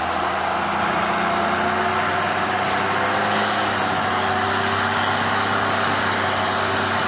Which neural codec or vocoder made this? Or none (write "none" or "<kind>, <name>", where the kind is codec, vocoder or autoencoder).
none